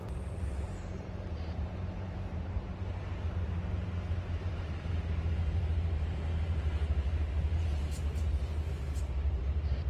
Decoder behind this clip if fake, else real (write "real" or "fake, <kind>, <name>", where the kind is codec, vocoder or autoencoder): fake, vocoder, BigVGAN v2